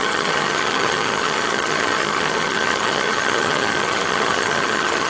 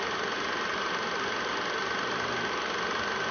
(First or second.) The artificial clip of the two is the first